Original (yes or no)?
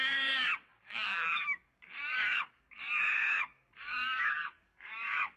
no